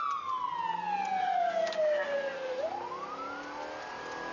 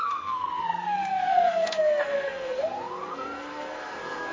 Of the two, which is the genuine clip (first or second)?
first